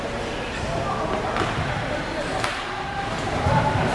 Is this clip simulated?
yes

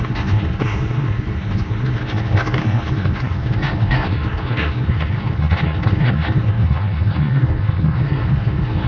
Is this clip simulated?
yes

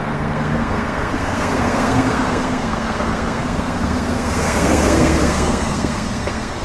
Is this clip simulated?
yes